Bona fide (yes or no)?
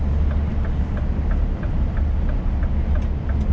yes